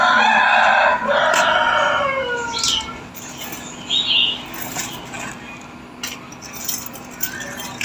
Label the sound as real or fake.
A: real